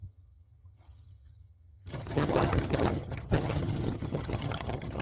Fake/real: fake